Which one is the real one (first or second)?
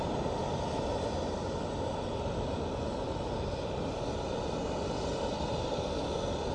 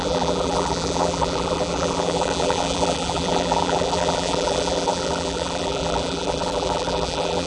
first